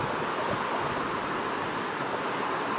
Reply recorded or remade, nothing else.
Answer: recorded